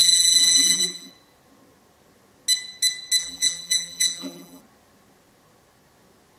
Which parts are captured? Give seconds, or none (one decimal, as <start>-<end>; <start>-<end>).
1.1-3.2; 4.6-6.4